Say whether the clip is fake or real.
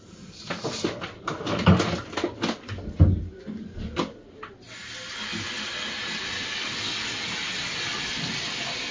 real